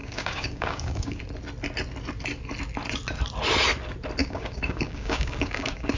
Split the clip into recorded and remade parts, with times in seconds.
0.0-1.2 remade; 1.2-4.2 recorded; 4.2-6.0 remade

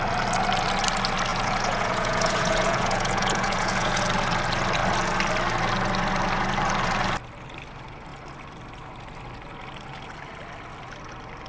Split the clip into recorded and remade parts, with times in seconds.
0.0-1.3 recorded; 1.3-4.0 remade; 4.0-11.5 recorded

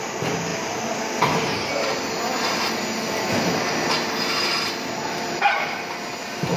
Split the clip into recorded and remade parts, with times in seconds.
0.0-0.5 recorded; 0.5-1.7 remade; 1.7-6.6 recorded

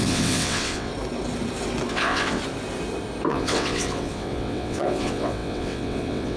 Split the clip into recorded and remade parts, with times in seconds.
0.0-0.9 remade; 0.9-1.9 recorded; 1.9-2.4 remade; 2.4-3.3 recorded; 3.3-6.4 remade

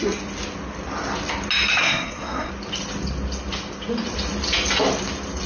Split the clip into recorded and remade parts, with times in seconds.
0.0-1.8 recorded; 1.8-2.5 remade; 2.5-5.5 recorded

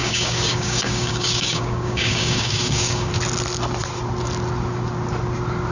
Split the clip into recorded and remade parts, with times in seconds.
0.0-3.1 remade; 3.1-5.7 recorded

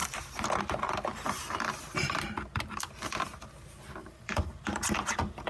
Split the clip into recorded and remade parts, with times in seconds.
0.0-1.1 recorded; 1.1-1.7 remade; 1.7-4.0 recorded; 4.0-4.6 remade; 4.6-5.5 recorded